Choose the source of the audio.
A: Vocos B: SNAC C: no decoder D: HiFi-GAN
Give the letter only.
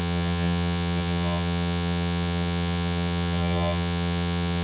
D